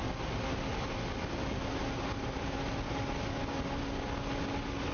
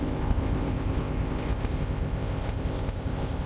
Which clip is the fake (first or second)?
second